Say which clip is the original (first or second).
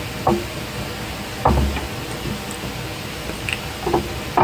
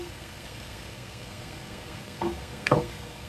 first